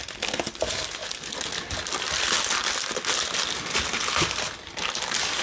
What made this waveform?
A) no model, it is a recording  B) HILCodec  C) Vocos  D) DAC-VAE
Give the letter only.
A